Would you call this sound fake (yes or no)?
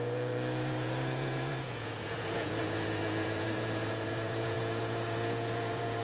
yes